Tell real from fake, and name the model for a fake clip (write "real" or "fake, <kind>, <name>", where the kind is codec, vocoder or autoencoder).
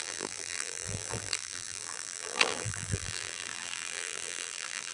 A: fake, vocoder, BigVGAN v2